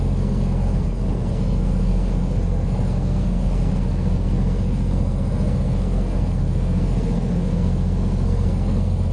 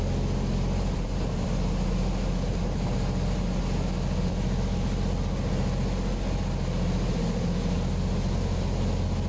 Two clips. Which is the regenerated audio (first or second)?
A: first